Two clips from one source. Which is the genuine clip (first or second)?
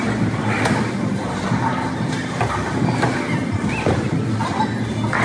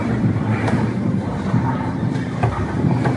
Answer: first